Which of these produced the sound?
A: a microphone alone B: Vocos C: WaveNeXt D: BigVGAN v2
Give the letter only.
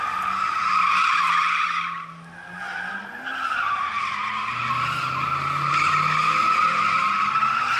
A